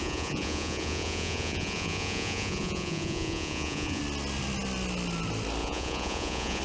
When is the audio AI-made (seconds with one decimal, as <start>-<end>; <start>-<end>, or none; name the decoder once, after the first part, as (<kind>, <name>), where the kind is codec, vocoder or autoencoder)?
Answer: 0.0-4.0 (vocoder, Vocos); 5.6-6.6